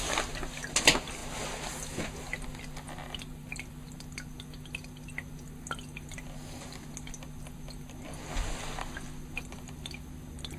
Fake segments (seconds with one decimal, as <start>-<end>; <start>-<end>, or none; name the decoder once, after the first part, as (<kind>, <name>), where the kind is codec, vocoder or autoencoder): none